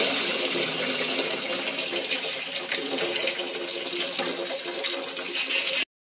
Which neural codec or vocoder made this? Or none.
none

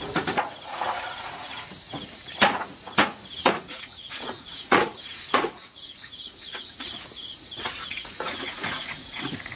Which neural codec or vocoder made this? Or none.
vocoder, Vocos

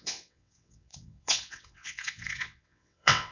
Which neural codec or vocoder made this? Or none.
vocoder, WaveNeXt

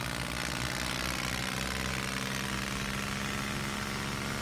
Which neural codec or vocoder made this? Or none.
none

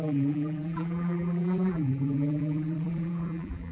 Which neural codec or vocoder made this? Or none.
vocoder, BigVGAN v2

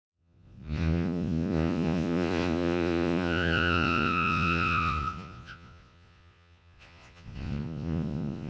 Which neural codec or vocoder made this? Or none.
vocoder, Vocos